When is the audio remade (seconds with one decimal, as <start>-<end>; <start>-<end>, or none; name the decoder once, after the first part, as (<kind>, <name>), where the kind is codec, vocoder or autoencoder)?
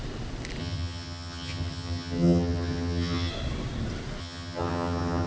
0.6-3.3 (vocoder, HiFi-GAN); 4.2-5.3